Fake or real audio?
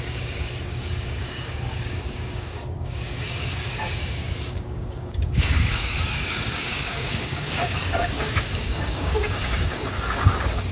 fake